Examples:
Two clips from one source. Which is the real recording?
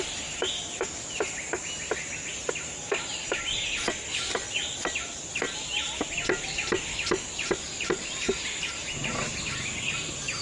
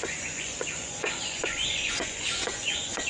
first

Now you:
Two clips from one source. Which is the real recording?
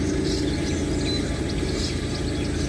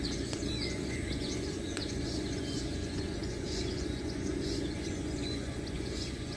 first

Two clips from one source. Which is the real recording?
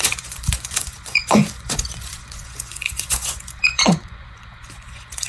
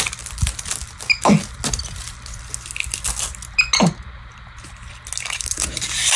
second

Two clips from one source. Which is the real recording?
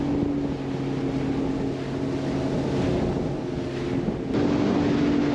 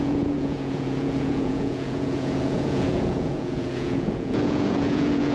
first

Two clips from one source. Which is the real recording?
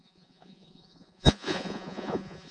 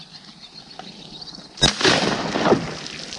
second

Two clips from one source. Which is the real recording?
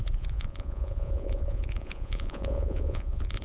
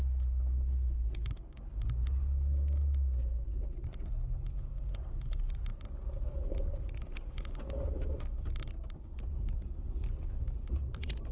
second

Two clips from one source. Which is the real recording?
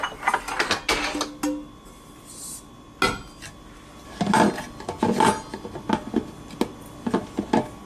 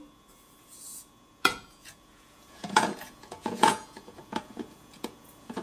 first